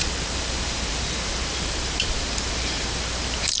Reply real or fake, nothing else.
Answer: fake